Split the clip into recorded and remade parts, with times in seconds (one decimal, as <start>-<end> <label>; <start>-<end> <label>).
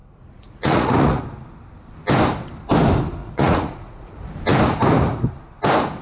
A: 0.0-1.2 remade; 1.2-3.2 recorded; 3.2-4.1 remade; 4.1-6.0 recorded